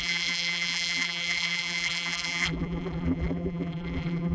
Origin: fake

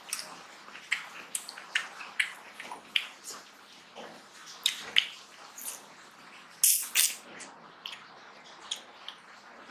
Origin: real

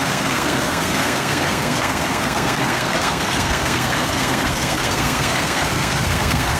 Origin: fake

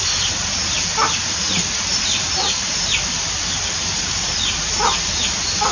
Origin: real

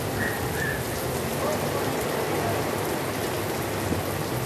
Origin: real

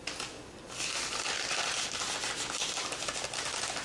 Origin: real